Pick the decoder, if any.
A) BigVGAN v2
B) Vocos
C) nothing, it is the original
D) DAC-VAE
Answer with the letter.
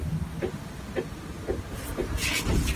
C